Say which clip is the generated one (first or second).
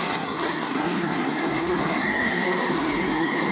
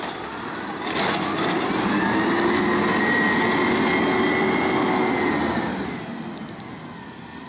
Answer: first